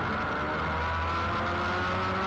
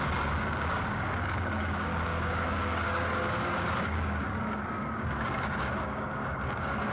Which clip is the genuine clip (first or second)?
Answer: first